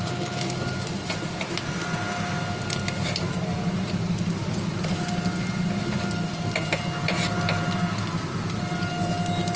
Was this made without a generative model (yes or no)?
yes